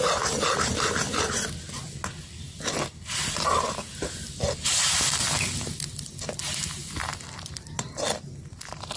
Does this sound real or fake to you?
real